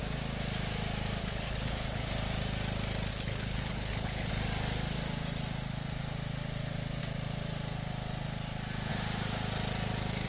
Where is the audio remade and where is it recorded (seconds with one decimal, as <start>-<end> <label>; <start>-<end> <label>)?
0.0-1.2 recorded; 1.2-2.1 remade; 2.1-3.1 recorded; 3.1-4.3 remade; 4.3-10.3 recorded